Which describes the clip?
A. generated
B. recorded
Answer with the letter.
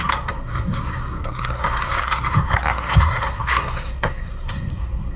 A